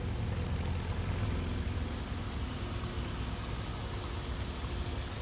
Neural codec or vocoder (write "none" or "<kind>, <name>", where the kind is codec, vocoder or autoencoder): none